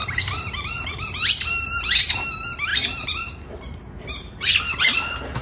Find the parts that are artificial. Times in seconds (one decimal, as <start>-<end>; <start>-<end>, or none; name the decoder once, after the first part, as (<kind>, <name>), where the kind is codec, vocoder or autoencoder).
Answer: 0.0-2.2 (vocoder, BigVGAN v2); 2.7-4.6